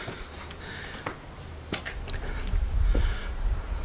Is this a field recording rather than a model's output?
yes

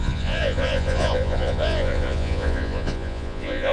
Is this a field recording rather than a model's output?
no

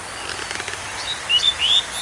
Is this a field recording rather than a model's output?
yes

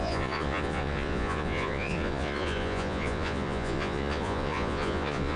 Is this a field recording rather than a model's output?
no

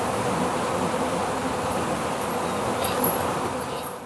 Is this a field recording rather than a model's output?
yes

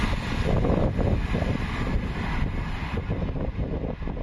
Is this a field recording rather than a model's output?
yes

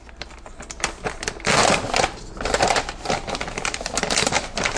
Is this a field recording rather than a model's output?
yes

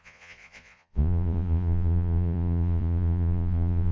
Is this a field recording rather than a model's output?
no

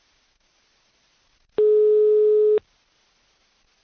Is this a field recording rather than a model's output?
yes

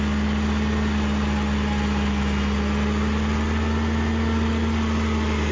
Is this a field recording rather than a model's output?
yes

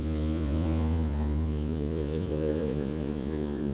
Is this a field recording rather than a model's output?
no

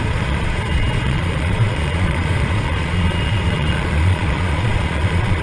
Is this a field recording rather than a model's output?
no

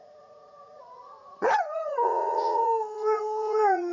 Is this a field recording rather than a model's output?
no